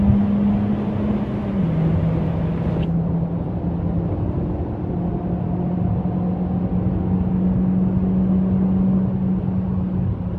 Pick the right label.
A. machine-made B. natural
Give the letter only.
B